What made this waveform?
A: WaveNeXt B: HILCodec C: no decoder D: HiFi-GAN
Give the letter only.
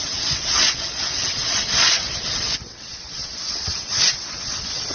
A